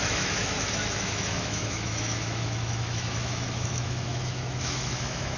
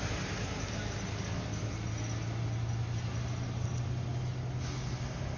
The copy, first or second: first